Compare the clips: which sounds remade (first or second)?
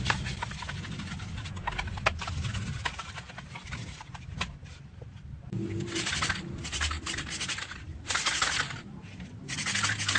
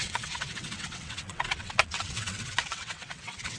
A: second